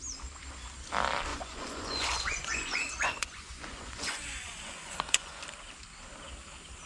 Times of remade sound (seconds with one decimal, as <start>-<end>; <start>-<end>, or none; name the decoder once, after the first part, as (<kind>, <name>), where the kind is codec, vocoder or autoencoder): 1.3-5.4 (vocoder, Vocos)